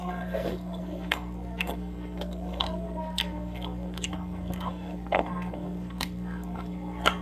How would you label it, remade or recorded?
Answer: remade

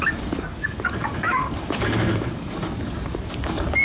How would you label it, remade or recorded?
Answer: remade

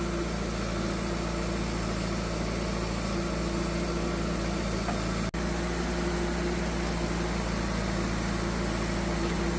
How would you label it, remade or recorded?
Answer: recorded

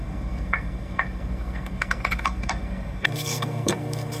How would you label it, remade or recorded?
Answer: remade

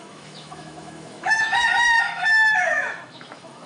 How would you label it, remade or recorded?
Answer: remade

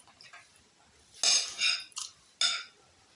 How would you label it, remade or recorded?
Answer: recorded